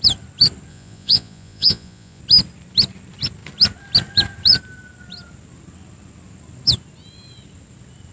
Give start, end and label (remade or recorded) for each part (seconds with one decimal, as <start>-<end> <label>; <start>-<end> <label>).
0.0-0.7 recorded; 0.7-2.2 remade; 2.2-8.1 recorded